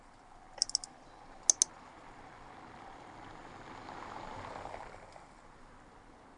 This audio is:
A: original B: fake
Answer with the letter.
A